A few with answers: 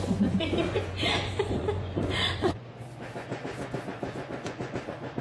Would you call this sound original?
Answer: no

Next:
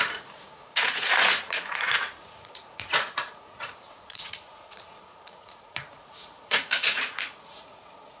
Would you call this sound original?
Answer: no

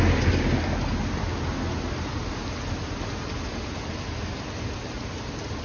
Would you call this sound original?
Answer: yes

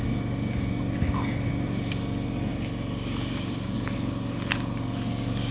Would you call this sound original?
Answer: yes